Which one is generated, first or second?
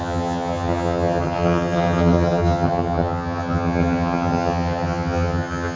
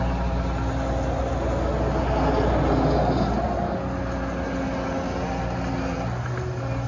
first